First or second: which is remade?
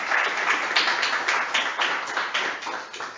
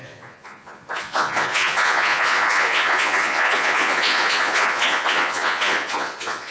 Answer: second